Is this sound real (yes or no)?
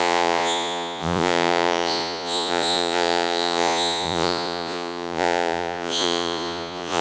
no